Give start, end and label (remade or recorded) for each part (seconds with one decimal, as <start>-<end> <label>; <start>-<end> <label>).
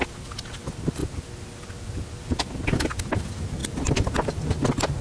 0.0-5.0 recorded